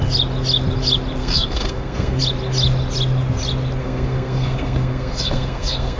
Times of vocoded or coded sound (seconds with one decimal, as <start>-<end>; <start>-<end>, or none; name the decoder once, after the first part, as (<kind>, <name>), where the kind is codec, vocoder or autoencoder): 1.2-2.2 (codec, SNAC); 3.8-6.0